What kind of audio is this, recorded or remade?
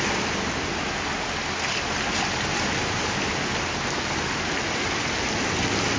recorded